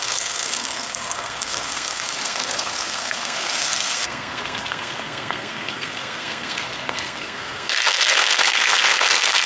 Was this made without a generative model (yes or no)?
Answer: no